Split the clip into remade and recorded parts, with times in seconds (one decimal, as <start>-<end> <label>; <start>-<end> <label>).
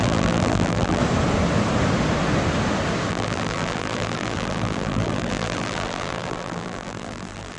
0.0-1.0 remade; 1.0-3.1 recorded; 3.1-7.6 remade